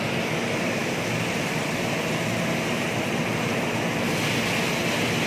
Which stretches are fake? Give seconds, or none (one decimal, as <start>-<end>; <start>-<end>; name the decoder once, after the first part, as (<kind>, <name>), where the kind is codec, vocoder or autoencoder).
none